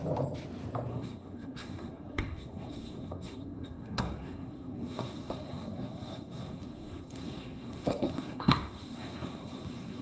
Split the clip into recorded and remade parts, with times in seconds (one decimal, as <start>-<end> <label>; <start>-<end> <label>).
0.0-0.9 recorded; 0.9-10.0 remade